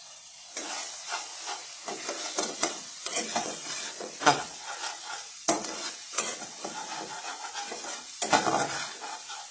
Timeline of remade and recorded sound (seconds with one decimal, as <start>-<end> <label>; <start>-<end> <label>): 0.0-1.3 remade; 1.3-2.2 recorded; 2.2-6.9 remade; 6.9-9.5 recorded